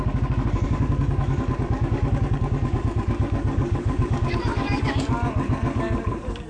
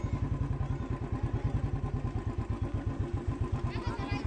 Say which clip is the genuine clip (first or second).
second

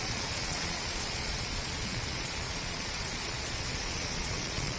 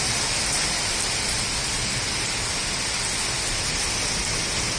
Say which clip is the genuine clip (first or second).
second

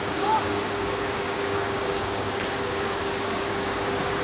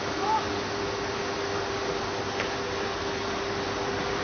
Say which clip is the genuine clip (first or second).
second